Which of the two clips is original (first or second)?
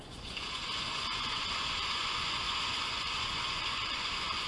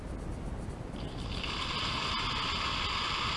second